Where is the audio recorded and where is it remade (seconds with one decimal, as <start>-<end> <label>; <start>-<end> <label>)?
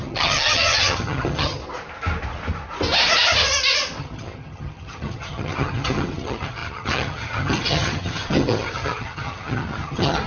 0.0-1.6 remade; 1.6-4.0 recorded; 4.0-10.3 remade